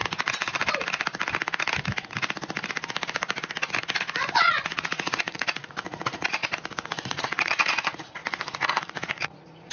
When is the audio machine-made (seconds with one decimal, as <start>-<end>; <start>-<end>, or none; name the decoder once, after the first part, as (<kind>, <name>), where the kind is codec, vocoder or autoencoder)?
4.5-6.4 (vocoder, Vocos); 7.1-9.7